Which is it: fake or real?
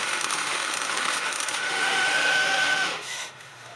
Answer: fake